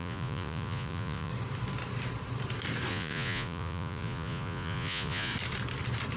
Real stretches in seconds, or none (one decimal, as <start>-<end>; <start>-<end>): 1.3-2.9; 5.3-6.2